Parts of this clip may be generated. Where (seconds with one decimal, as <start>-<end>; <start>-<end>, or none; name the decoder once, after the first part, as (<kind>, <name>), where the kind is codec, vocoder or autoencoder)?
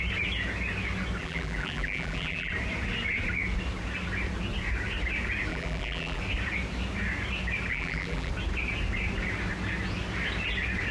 1.2-2.5 (vocoder, BigVGAN v2); 5.5-6.2; 7.7-8.3